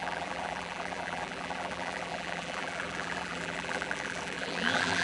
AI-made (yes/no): yes